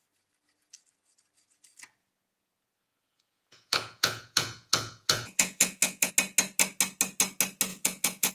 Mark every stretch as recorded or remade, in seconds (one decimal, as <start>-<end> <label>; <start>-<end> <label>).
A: 0.0-2.0 recorded; 2.0-6.1 remade; 6.1-7.7 recorded; 7.7-8.3 remade